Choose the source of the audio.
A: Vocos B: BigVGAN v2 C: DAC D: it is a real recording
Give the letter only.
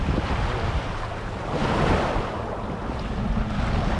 D